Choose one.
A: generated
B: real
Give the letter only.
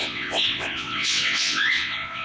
A